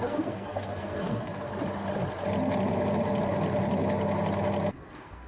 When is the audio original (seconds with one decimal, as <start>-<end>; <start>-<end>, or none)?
1.5-4.7